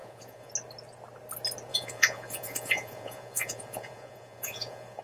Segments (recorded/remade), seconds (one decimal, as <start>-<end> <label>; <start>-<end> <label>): 0.0-0.5 remade; 0.5-1.7 recorded; 1.7-5.0 remade